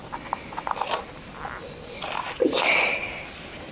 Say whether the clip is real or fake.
real